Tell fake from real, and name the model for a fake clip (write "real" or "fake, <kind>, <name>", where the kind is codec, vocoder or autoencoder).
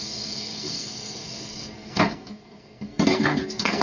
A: fake, codec, SNAC